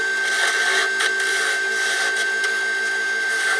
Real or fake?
real